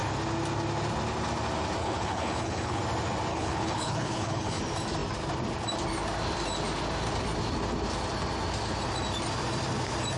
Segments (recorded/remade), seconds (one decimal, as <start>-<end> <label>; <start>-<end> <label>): 0.0-1.8 recorded; 1.8-2.8 remade; 2.8-3.3 recorded; 3.3-4.6 remade; 4.6-10.2 recorded